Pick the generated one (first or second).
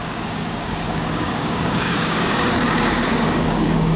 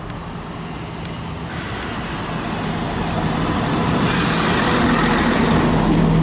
first